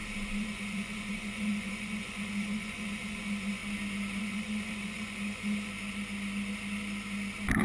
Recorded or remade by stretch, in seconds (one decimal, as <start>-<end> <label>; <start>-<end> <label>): 0.0-3.6 remade; 3.6-4.2 recorded; 4.2-5.7 remade; 5.7-7.6 recorded